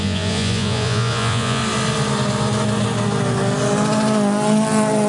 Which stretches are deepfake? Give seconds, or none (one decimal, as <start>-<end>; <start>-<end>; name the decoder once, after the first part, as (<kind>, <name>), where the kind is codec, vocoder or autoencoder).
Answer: 0.0-1.6 (vocoder, Vocos)